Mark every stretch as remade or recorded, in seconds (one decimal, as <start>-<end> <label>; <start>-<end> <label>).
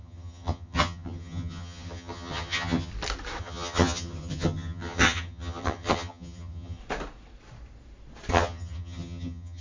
0.0-2.9 remade; 2.9-3.4 recorded; 3.4-6.8 remade; 6.8-8.3 recorded; 8.3-9.6 remade